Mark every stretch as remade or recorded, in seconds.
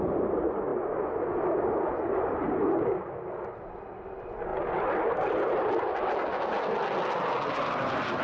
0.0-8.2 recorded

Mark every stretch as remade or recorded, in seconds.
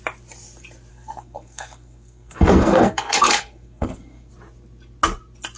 0.0-0.9 recorded; 0.9-4.3 remade; 4.3-5.6 recorded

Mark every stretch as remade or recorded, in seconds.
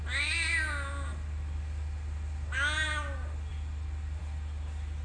0.0-5.0 recorded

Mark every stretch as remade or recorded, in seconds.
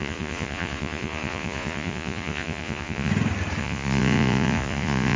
0.0-3.1 remade; 3.1-3.6 recorded; 3.6-5.2 remade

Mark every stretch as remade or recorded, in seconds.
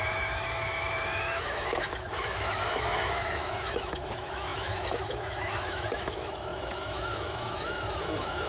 0.0-8.5 remade